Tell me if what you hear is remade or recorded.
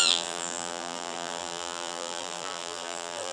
remade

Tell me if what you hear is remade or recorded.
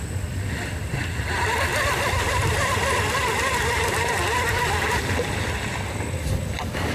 recorded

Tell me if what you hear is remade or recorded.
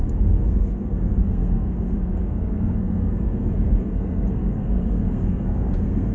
remade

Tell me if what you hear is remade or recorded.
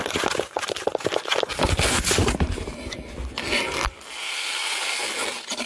recorded